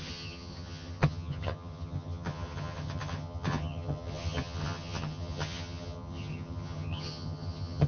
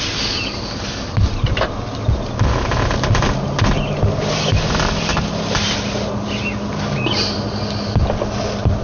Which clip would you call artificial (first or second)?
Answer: first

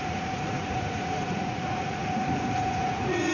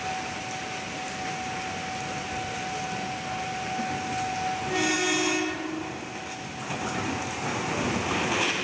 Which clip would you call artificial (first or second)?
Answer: first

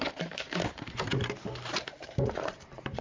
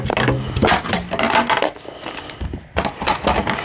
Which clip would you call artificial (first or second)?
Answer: first